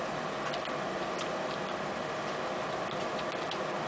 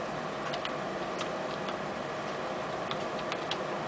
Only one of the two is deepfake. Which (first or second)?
second